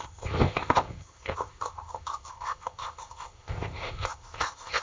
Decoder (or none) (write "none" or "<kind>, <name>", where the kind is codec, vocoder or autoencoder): codec, ZipCodec